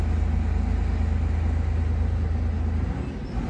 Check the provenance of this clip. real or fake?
real